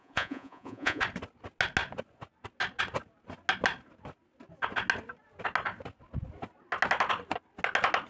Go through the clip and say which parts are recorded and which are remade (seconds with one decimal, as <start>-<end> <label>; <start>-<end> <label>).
0.0-1.0 remade; 1.0-8.1 recorded